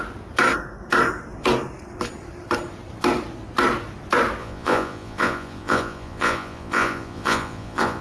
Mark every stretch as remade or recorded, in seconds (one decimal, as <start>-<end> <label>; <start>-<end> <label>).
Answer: 0.0-4.4 recorded; 4.4-8.0 remade